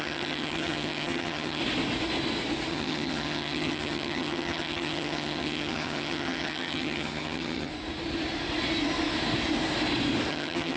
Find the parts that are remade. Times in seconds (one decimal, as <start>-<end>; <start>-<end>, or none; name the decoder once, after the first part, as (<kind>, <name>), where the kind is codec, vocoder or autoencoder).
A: 0.0-1.6 (vocoder, HiFi-GAN); 2.7-7.7; 10.3-10.8